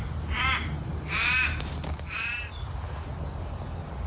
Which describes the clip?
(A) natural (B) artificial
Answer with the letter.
A